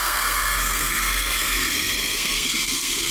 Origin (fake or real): fake